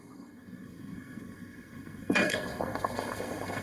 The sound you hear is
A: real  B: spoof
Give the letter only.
B